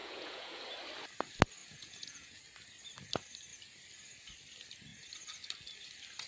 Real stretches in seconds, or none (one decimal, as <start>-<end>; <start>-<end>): 0.6-1.6; 2.4-6.3